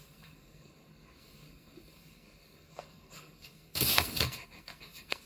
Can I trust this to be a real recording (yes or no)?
no